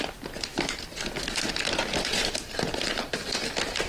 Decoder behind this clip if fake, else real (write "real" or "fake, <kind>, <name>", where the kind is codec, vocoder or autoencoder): real